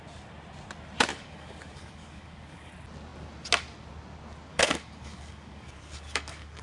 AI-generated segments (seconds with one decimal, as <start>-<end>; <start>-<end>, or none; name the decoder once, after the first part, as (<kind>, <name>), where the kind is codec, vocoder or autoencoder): 1.1-2.7 (codec, DAC); 4.5-6.6